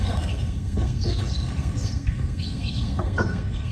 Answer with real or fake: fake